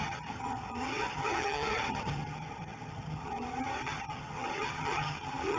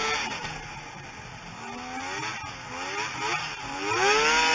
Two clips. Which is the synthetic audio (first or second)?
first